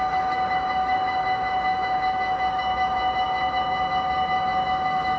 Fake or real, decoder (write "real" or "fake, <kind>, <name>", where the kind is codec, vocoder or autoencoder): fake, autoencoder, DAC-VAE